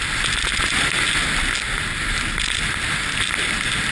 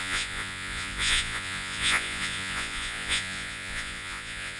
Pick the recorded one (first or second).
first